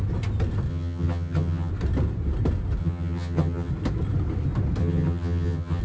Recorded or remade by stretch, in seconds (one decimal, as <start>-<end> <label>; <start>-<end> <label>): 0.0-0.7 recorded; 0.7-1.7 remade; 1.7-2.8 recorded; 2.8-3.7 remade; 3.7-4.8 recorded; 4.8-5.8 remade